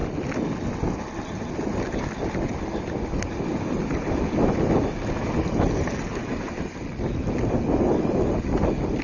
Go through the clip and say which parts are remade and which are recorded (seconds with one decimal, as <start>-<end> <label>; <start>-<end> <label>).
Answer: 0.0-9.0 recorded